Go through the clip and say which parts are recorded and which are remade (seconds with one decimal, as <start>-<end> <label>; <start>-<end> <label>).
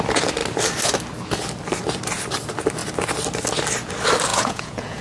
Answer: 0.0-4.3 recorded; 4.3-5.0 remade